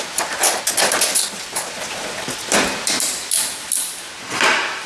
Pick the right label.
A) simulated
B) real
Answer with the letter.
B